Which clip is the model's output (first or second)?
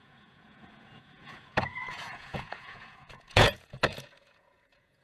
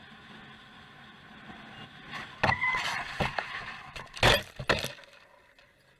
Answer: first